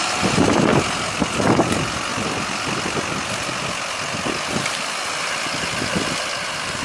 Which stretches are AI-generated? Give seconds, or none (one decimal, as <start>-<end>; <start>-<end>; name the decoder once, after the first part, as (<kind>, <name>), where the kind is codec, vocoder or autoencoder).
none